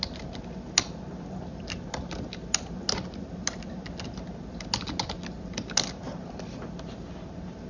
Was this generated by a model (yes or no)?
no